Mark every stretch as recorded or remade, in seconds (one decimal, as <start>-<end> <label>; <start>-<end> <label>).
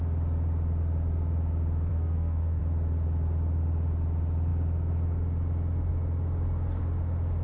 0.0-1.9 recorded; 1.9-2.6 remade; 2.6-7.4 recorded